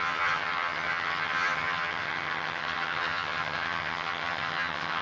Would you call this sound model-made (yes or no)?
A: yes